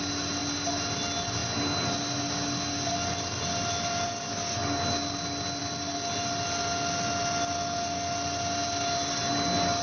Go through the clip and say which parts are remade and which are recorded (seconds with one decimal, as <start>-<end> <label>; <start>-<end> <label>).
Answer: 0.0-9.8 recorded